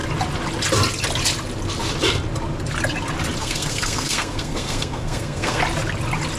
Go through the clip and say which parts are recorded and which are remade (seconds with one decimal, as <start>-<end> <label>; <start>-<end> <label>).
0.0-3.4 recorded; 3.4-5.6 remade; 5.6-6.4 recorded